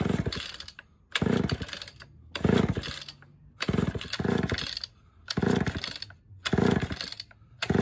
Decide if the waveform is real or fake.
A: real